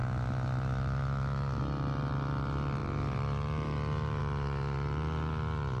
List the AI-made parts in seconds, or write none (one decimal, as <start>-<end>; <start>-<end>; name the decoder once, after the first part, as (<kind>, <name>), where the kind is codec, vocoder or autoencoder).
0.0-1.6 (autoencoder, DAC-VAE)